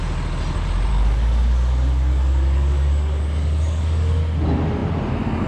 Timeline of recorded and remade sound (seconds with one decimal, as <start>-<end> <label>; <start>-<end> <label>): 0.0-0.9 recorded; 0.9-4.2 remade; 4.2-5.5 recorded